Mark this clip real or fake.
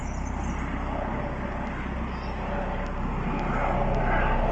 real